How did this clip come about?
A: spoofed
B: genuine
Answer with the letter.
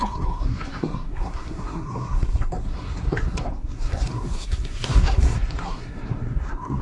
A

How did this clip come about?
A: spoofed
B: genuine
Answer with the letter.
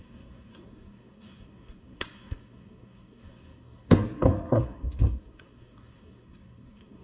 A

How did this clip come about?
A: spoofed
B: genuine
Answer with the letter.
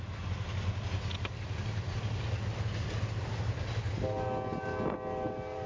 B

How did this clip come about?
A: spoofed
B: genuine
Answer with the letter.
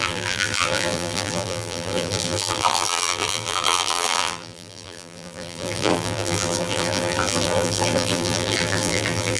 A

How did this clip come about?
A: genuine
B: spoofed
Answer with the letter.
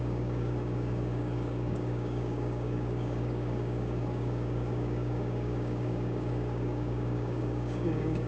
B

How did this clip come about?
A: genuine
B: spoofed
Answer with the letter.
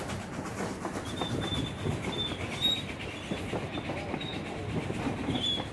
A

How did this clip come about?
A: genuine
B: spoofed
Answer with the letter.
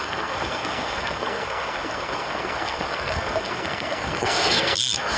B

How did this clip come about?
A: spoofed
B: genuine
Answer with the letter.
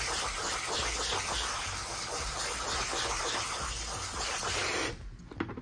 B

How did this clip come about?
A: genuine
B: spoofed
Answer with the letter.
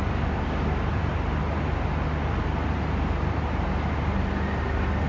A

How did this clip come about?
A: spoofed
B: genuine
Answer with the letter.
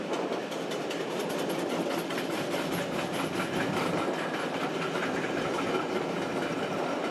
B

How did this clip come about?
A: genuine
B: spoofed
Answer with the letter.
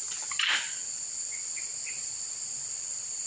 A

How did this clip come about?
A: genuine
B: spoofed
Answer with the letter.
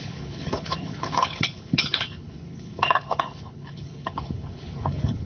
B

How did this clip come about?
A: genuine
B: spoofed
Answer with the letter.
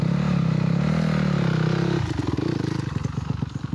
A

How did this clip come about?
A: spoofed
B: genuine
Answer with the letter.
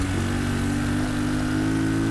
B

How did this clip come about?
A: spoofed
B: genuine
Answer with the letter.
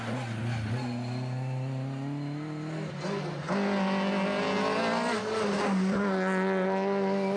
B